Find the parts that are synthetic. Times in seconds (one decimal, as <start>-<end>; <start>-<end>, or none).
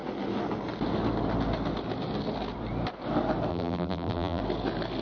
3.5-4.4